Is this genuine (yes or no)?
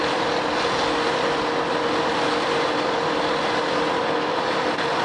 yes